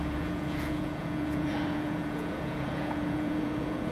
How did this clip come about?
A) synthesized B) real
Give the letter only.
A